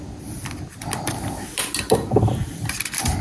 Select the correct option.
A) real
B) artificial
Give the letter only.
B